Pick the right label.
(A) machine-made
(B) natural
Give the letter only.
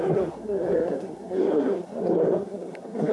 A